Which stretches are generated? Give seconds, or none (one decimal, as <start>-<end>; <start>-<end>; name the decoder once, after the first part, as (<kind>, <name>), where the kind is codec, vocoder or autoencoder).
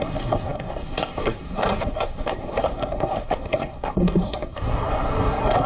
0.0-5.7 (codec, SNAC)